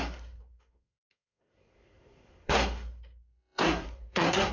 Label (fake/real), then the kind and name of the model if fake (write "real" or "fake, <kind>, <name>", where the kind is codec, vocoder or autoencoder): fake, codec, SNAC